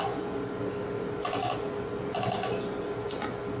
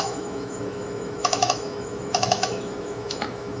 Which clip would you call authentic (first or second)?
first